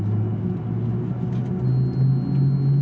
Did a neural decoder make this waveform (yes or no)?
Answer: no